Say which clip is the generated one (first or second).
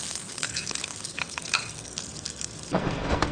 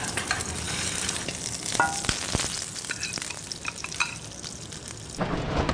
first